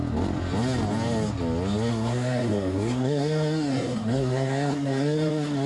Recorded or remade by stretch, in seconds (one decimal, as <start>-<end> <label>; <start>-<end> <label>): 0.0-1.9 recorded; 1.9-5.3 remade; 5.3-5.7 recorded